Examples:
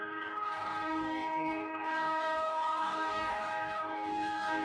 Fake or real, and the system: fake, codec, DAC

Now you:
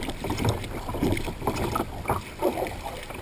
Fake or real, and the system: fake, vocoder, BigVGAN v2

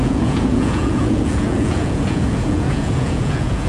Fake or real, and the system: fake, vocoder, Vocos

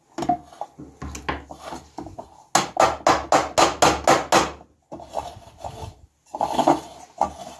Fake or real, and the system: real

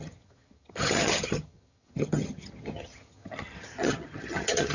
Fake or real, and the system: fake, vocoder, HiFi-GAN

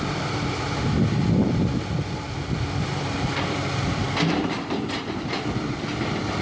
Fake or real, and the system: fake, vocoder, BigVGAN v2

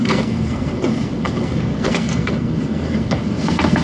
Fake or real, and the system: fake, codec, SNAC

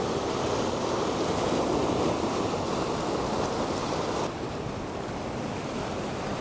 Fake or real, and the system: real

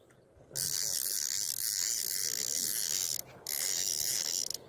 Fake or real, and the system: real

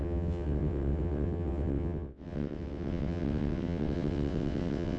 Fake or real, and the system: fake, vocoder, WaveNeXt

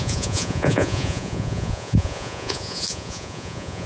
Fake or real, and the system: fake, vocoder, Vocos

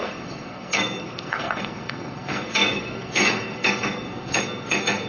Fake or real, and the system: fake, codec, SNAC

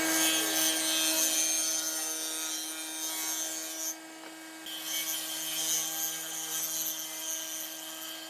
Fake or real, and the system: real